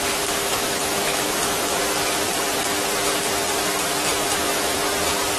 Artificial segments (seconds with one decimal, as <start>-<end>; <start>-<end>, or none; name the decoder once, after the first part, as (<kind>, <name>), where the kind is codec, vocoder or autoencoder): 0.4-1.8 (autoencoder, DAC-VAE); 4.0-4.6